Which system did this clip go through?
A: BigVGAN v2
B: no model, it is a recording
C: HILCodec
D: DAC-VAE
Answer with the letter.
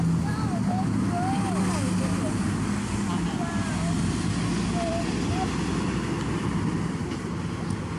B